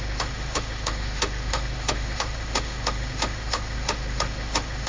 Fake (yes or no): yes